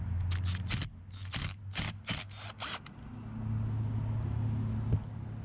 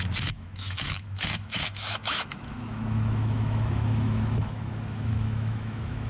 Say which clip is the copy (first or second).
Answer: second